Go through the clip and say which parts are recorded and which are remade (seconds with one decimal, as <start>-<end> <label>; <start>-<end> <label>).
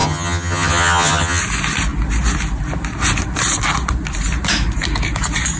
0.0-1.4 remade; 1.4-5.6 recorded